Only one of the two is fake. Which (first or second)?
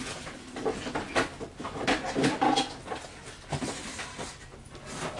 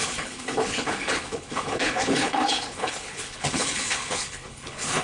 second